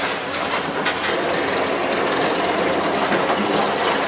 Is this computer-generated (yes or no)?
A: no